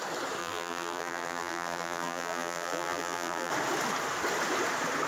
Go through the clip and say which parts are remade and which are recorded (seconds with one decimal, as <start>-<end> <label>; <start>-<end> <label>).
0.0-0.4 recorded; 0.4-3.5 remade; 3.5-5.1 recorded